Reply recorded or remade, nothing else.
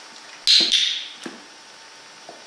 recorded